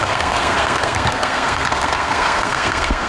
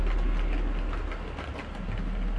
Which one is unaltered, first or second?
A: second